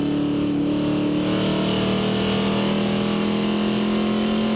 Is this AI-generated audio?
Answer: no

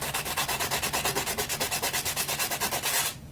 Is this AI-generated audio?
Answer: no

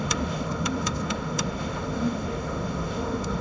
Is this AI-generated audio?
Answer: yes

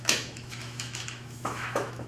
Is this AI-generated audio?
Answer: yes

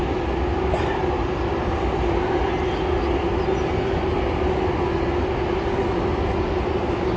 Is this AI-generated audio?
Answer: no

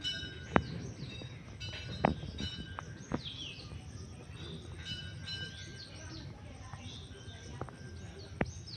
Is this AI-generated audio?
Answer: no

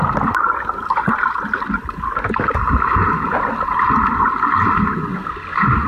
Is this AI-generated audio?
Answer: no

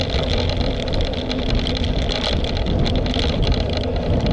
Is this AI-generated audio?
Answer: no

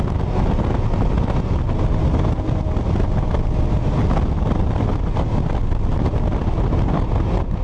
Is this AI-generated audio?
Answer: no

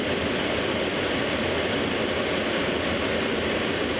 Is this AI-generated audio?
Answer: no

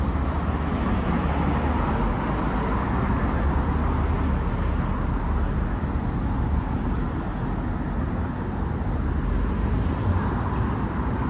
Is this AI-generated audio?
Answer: no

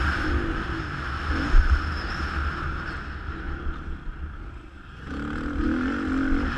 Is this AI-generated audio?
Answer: no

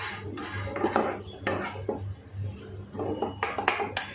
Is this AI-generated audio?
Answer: no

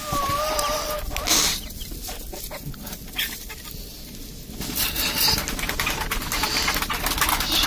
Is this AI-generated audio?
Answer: no